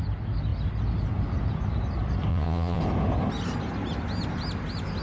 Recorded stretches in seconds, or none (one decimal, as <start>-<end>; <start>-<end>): 0.0-2.3; 2.8-5.0